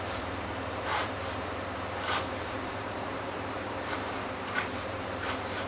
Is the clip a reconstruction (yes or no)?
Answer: yes